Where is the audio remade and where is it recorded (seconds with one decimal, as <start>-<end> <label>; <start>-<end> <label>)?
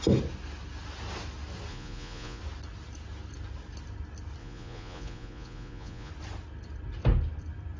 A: 0.0-1.7 recorded; 1.7-2.4 remade; 2.4-4.4 recorded; 4.4-6.1 remade; 6.1-7.8 recorded